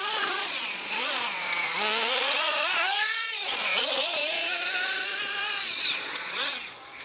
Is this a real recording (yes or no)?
no